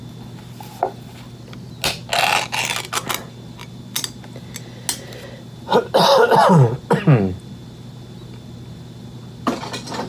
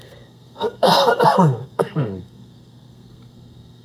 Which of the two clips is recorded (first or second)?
first